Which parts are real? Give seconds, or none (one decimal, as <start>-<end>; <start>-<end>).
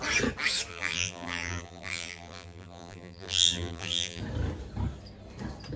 0.0-0.7; 4.2-5.8